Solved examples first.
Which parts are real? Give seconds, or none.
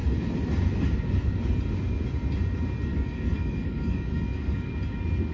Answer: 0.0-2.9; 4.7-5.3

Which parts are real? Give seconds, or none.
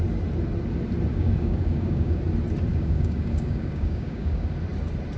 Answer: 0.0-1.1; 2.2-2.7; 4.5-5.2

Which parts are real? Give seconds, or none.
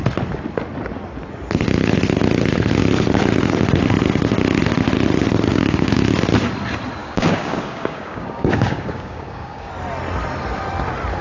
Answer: 0.0-5.5; 6.1-7.0; 9.7-11.2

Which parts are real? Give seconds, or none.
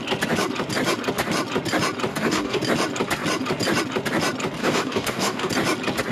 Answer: 0.0-2.1; 2.6-4.6; 5.5-6.1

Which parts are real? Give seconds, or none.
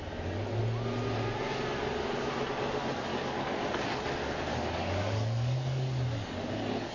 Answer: 0.0-3.1; 3.9-4.5